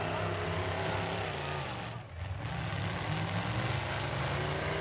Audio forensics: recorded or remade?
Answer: recorded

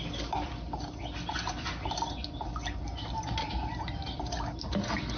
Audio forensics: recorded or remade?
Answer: recorded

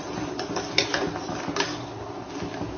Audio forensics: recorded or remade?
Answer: recorded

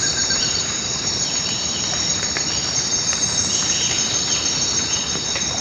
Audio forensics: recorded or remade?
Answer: remade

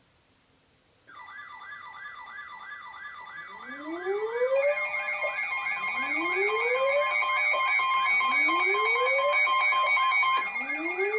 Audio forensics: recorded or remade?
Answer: recorded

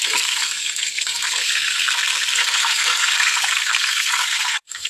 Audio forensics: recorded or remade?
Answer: remade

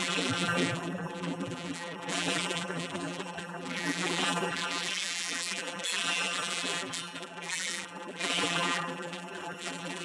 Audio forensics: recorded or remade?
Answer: remade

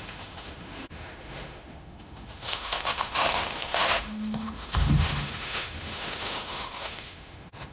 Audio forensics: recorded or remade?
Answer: remade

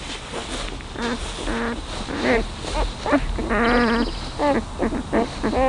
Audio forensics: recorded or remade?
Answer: recorded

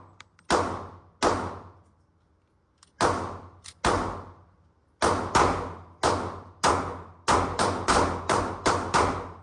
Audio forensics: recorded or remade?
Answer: recorded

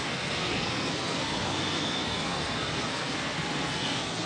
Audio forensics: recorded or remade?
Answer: remade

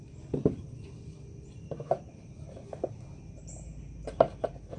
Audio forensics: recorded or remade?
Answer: recorded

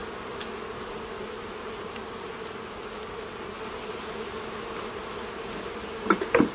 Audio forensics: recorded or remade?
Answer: recorded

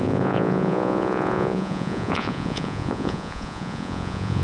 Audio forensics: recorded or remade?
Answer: remade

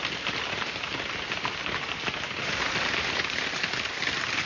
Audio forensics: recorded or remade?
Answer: recorded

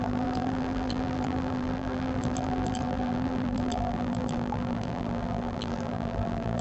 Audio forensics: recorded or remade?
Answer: remade